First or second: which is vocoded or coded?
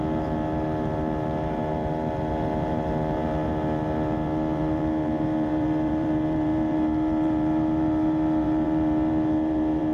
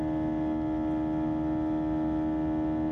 first